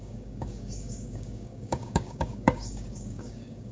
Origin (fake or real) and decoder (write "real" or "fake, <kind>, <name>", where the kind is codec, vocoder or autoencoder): fake, codec, DAC